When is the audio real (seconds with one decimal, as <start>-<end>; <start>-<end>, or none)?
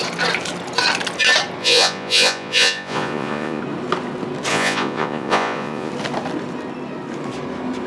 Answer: 0.0-1.6; 3.6-4.5; 5.9-7.9